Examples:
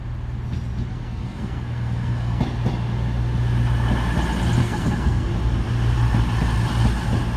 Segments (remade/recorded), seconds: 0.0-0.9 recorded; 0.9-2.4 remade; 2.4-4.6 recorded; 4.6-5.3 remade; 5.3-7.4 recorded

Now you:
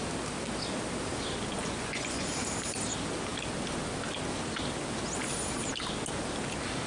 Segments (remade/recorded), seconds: 0.0-1.6 recorded; 1.6-2.3 remade; 2.3-6.9 recorded

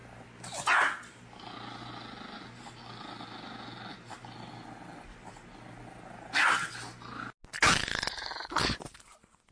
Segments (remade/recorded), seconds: 0.0-9.5 recorded

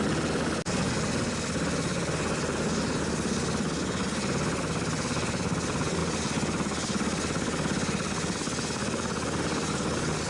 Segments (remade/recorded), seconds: 0.0-10.3 recorded